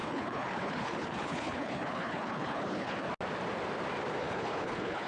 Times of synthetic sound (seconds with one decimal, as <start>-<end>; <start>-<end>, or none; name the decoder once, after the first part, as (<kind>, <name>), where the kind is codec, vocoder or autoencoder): 0.0-3.1 (codec, HILCodec); 4.2-5.1